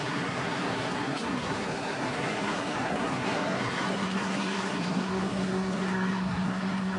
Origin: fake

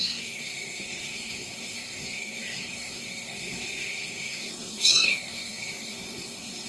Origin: fake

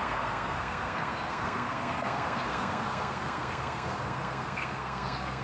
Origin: fake